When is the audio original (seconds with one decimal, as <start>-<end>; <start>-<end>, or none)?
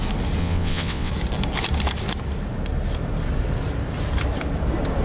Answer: 0.0-0.4; 1.1-5.0